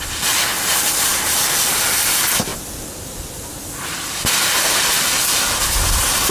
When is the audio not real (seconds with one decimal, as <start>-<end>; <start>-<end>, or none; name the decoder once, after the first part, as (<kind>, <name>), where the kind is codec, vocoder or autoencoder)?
none